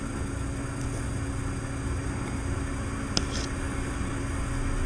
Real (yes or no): yes